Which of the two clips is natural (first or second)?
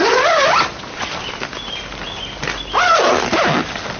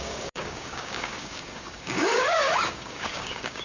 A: first